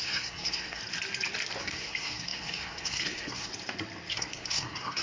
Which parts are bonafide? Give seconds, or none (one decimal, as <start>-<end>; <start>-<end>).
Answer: 0.8-1.6; 3.5-4.1